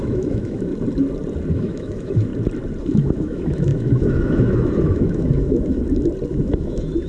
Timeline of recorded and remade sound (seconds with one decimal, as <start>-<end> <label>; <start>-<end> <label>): 0.0-0.7 remade; 0.7-1.5 recorded; 1.5-2.3 remade; 2.3-2.8 recorded; 2.8-5.8 remade; 5.8-6.3 recorded; 6.3-7.1 remade